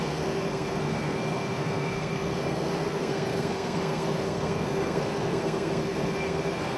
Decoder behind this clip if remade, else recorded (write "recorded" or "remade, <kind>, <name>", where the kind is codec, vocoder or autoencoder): remade, codec, SNAC